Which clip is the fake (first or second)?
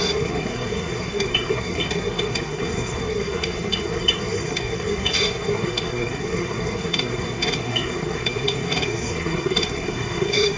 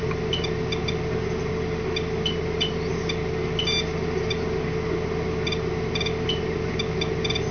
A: first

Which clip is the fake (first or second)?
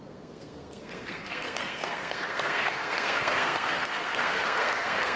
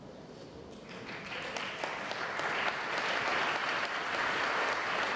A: first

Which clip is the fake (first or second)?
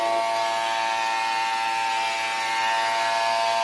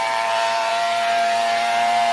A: second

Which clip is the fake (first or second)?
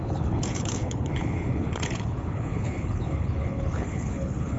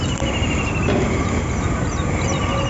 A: first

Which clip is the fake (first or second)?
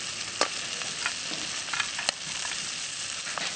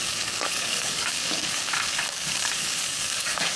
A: second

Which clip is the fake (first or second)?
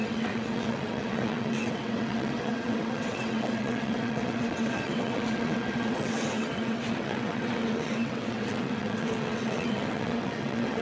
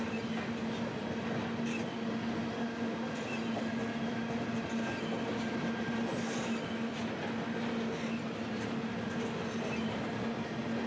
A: first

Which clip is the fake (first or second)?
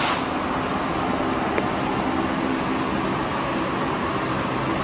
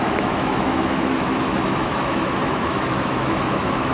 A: second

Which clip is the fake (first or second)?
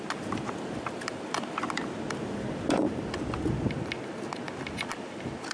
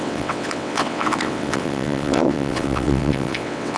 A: second